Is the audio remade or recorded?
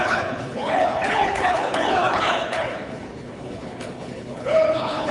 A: remade